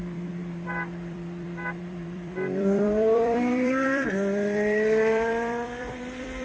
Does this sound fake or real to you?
fake